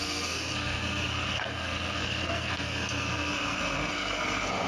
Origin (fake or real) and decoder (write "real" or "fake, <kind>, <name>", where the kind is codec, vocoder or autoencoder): fake, codec, SNAC